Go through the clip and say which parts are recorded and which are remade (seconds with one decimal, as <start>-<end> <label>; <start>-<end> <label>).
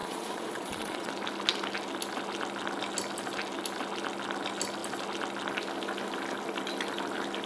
0.0-1.1 remade; 1.1-7.5 recorded